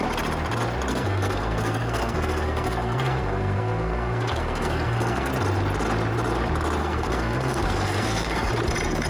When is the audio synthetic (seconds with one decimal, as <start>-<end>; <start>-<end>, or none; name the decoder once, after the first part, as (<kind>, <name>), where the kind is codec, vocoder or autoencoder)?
0.9-5.3 (codec, SNAC); 6.8-8.5